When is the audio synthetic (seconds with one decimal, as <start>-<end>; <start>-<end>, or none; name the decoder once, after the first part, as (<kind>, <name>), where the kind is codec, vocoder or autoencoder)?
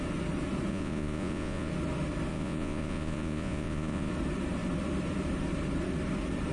0.7-1.7 (vocoder, Vocos); 2.3-4.1